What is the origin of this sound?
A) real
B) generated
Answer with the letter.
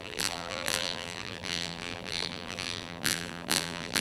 B